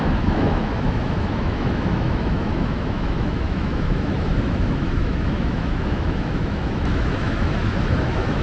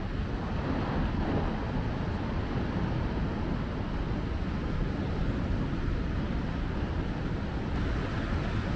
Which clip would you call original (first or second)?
second